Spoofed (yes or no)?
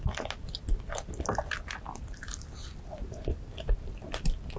no